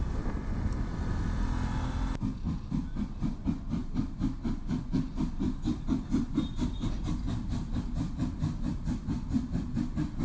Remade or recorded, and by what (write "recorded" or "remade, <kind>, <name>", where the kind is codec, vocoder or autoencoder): recorded